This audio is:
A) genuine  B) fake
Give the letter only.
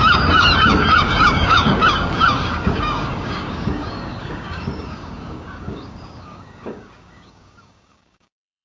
B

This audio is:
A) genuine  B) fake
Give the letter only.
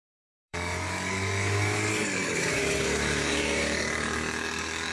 B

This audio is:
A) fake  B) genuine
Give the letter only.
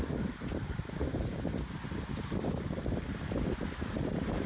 B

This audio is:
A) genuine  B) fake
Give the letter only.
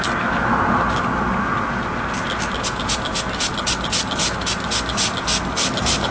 A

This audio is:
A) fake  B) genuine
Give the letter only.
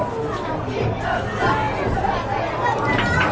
B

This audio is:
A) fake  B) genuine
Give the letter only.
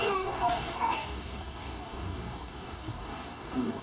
A